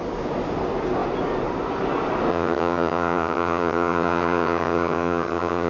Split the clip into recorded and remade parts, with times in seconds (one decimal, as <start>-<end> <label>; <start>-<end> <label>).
0.0-2.3 recorded; 2.3-5.7 remade